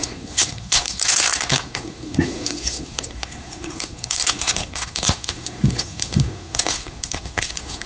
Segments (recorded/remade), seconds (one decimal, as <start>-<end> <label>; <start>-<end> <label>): 0.0-7.9 remade